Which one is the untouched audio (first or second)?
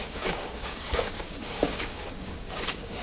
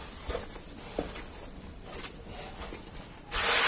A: second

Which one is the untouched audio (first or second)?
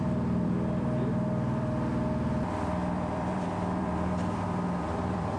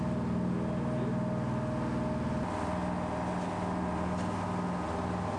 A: second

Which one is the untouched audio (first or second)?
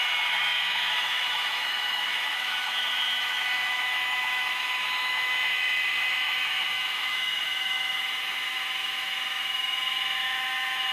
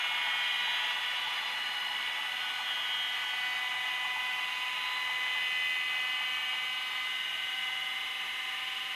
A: second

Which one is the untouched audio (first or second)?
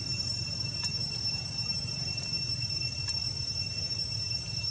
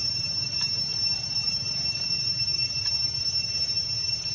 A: first